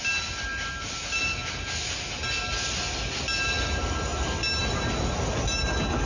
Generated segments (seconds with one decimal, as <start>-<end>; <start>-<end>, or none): none